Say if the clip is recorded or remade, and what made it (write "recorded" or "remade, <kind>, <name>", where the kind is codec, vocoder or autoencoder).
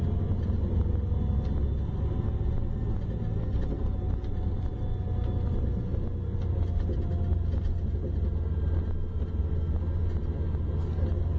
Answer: recorded